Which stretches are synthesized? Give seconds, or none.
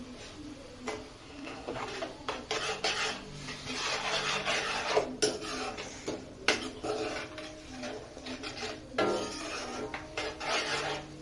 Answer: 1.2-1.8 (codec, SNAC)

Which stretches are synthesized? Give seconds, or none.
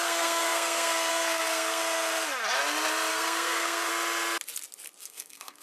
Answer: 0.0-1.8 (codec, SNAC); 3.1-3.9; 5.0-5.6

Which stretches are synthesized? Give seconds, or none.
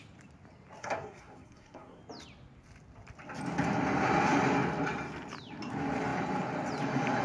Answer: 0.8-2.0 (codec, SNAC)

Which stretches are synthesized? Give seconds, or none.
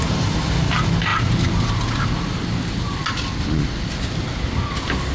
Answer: none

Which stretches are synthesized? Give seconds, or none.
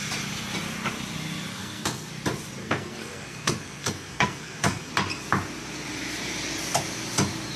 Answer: 1.5-2.1 (codec, SNAC); 2.6-4.9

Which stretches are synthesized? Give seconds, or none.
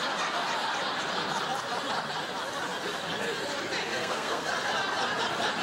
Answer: 3.9-4.5 (codec, SNAC)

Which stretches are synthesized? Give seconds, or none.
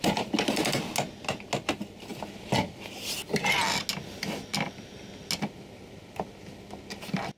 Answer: none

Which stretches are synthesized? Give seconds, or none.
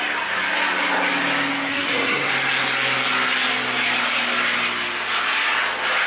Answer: 1.7-2.3 (codec, SNAC)